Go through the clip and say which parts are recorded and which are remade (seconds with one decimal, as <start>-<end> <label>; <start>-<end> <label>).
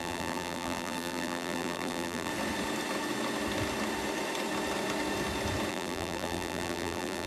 0.0-2.3 remade; 2.3-5.7 recorded; 5.7-7.3 remade